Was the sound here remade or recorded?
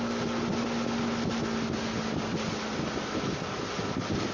recorded